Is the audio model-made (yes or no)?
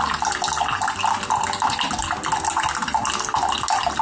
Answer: no